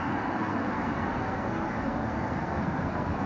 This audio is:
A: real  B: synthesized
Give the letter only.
B